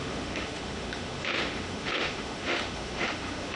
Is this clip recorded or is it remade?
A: remade